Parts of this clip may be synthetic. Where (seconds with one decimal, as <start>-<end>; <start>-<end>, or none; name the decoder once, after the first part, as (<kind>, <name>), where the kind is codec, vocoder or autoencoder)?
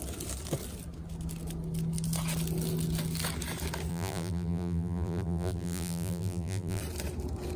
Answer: 3.9-6.8 (vocoder, BigVGAN v2)